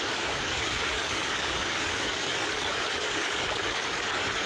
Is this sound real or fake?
fake